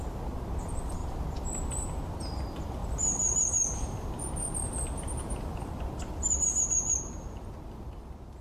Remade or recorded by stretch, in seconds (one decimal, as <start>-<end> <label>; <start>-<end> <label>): 0.0-1.0 remade; 1.0-2.1 recorded; 2.1-8.4 remade